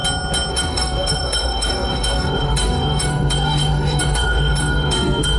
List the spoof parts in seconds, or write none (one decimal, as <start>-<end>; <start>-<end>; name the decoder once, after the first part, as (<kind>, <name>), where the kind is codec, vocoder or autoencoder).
0.5-5.4 (autoencoder, DAC-VAE)